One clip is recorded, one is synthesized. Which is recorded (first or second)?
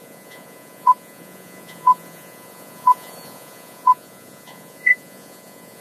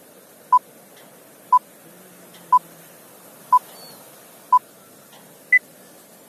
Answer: second